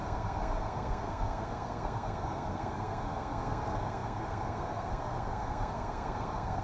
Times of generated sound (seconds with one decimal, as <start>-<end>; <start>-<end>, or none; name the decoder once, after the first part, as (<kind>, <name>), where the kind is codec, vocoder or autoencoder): 0.0-6.6 (codec, SNAC)